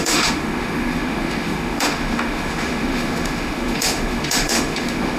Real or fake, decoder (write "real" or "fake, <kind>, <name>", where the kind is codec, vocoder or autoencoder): fake, autoencoder, DAC-VAE